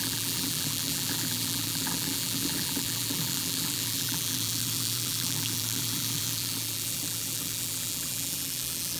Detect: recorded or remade remade